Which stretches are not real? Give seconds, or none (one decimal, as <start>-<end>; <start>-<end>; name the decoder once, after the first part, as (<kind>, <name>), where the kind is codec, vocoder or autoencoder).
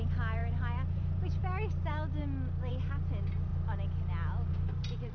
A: 0.0-2.2 (vocoder, BigVGAN v2); 2.7-3.5; 4.5-5.1